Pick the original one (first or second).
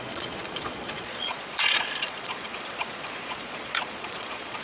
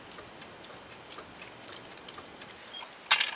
second